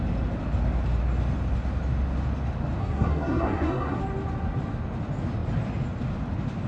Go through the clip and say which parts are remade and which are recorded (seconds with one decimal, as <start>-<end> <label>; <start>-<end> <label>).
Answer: 0.0-2.8 recorded; 2.8-4.0 remade; 4.0-6.7 recorded